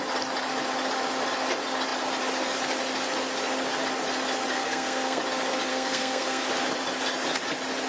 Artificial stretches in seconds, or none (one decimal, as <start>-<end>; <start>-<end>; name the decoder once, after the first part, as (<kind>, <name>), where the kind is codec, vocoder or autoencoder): 4.5-5.2 (codec, SNAC); 5.7-6.4